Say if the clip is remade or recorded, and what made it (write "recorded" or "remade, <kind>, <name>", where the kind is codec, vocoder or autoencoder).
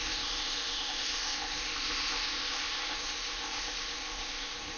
remade, codec, ZipCodec